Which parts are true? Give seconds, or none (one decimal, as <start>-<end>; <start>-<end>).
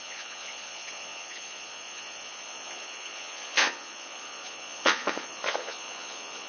none